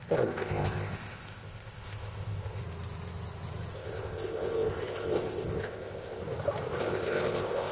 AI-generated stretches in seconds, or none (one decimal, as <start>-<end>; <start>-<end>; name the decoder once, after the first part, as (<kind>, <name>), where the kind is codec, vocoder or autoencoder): 0.0-2.6 (codec, ZipCodec); 3.7-6.2; 6.8-7.7